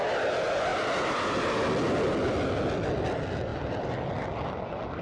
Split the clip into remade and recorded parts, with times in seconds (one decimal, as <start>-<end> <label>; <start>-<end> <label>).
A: 0.0-5.0 recorded